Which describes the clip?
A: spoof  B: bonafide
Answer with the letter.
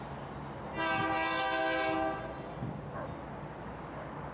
B